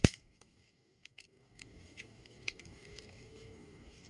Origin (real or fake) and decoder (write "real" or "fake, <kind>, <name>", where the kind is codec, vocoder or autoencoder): fake, codec, DAC